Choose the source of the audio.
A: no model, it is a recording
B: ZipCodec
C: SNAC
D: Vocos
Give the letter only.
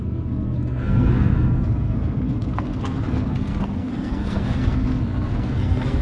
C